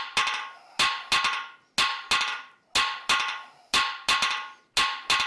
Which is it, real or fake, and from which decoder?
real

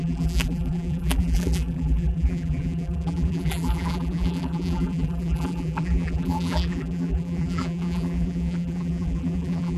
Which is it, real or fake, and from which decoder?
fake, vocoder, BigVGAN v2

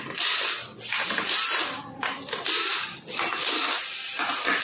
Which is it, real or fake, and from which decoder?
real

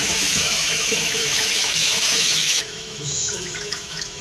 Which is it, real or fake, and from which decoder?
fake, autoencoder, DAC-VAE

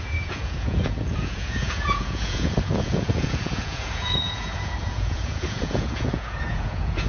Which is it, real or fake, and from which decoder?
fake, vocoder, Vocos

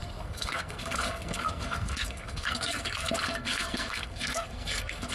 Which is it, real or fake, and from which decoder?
fake, codec, SNAC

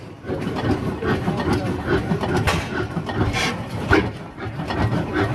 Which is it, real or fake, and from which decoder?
real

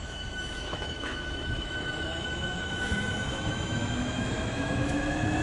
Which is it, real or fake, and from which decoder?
fake, autoencoder, DAC-VAE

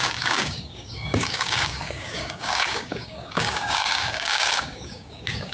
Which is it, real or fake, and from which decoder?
fake, codec, DAC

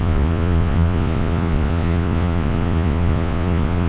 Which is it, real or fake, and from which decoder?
fake, vocoder, Vocos